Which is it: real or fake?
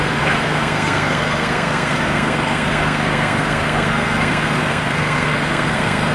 fake